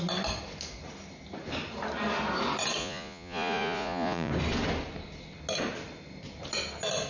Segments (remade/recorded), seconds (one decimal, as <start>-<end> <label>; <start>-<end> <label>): 0.0-2.8 recorded; 2.8-4.3 remade; 4.3-7.1 recorded